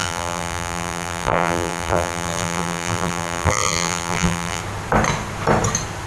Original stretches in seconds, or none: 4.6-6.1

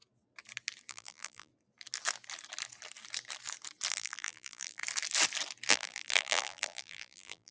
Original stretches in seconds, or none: 0.0-0.9; 1.5-3.9; 4.8-5.7

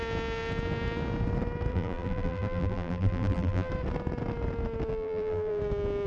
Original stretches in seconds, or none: 0.0-1.7; 3.7-4.9; 5.6-6.1

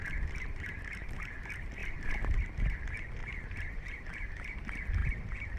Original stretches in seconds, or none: 0.7-3.2; 4.0-5.6

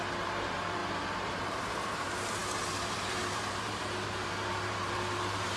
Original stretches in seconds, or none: none

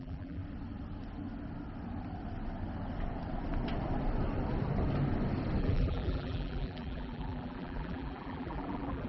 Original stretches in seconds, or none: 0.4-5.6

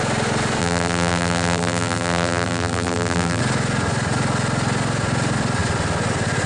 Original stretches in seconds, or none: 0.0-0.6; 3.4-6.5